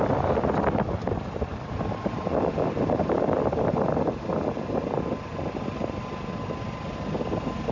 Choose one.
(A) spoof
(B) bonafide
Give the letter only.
B